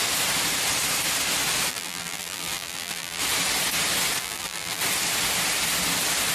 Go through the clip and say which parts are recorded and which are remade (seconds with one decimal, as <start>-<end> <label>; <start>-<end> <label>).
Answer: 0.0-1.7 recorded; 1.7-3.2 remade; 3.2-4.2 recorded; 4.2-4.8 remade; 4.8-6.3 recorded